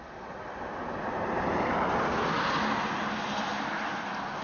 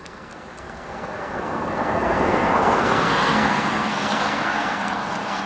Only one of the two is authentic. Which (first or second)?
first